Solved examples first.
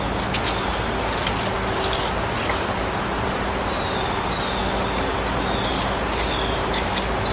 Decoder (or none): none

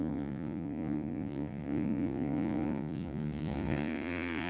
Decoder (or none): vocoder, Vocos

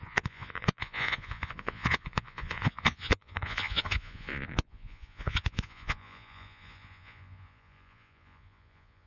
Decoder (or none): vocoder, Vocos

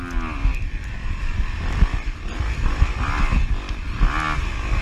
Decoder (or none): none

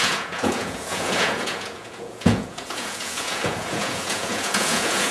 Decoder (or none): vocoder, Vocos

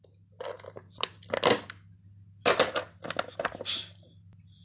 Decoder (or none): none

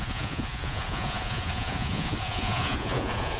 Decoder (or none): vocoder, Vocos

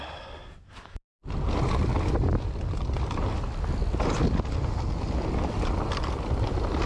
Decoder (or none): none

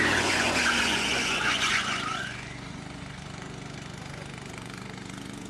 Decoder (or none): vocoder, Vocos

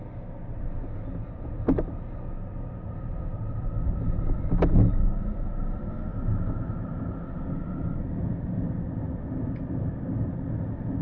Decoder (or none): none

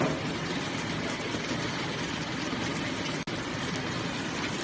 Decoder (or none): none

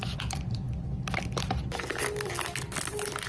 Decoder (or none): none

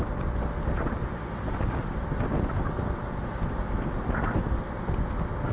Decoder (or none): none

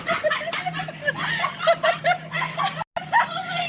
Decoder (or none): none